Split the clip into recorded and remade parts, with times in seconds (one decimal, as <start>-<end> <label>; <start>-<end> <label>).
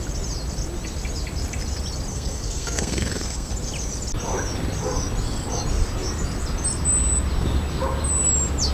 0.0-2.1 recorded; 2.1-3.5 remade; 3.5-8.7 recorded